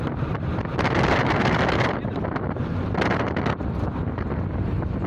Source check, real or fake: real